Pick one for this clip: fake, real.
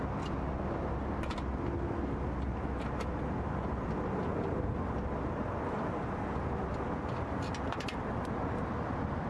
real